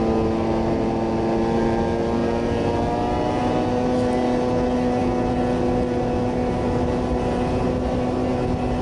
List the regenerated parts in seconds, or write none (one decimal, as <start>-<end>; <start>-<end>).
none

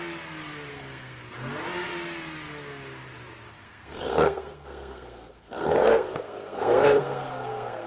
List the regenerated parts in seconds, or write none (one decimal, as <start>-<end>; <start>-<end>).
0.7-1.2; 3.5-7.9

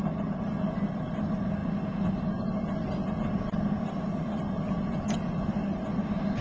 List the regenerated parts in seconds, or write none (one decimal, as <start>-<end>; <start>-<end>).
none

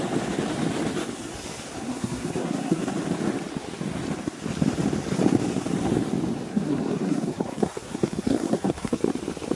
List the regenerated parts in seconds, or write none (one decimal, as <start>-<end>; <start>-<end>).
1.9-2.8; 6.5-9.0